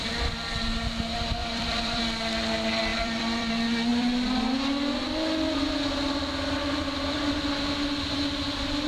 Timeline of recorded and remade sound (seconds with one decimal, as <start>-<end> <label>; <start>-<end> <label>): 0.0-1.4 recorded; 1.4-2.0 remade; 2.0-2.9 recorded; 2.9-3.5 remade; 3.5-3.9 recorded; 3.9-4.4 remade; 4.4-8.9 recorded